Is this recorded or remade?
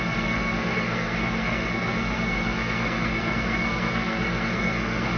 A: remade